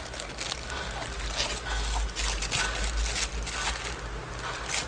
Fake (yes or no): no